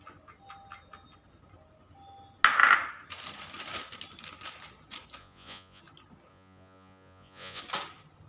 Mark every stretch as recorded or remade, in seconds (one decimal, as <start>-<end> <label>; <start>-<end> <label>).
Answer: 0.0-5.2 recorded; 5.2-5.8 remade; 5.8-6.3 recorded; 6.3-7.6 remade; 7.6-8.3 recorded